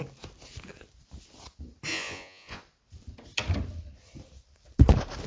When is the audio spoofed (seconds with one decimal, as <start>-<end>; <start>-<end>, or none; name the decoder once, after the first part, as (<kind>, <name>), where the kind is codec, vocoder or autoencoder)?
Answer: 1.9-2.6 (vocoder, Vocos)